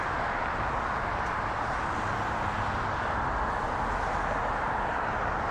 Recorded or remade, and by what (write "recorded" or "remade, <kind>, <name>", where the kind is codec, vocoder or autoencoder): recorded